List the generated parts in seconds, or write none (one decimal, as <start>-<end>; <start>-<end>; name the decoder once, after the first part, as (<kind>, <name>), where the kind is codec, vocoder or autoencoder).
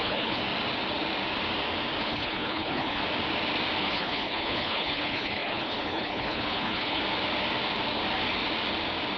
0.0-0.4 (codec, HILCodec); 2.0-3.0; 3.8-7.0